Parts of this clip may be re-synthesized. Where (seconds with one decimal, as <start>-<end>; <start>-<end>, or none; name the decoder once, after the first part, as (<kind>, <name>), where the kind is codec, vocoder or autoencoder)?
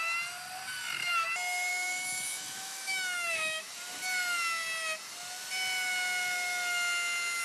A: 1.7-3.7 (autoencoder, DAC-VAE)